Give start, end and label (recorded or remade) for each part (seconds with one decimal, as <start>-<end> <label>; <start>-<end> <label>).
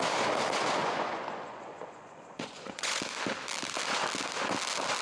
0.0-0.8 recorded; 0.8-3.0 remade; 3.0-5.0 recorded